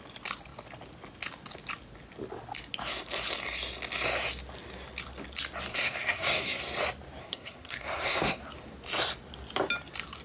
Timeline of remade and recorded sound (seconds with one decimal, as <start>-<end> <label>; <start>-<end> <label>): 0.0-5.7 recorded; 5.7-6.6 remade; 6.6-7.2 recorded; 7.2-8.4 remade; 8.4-10.2 recorded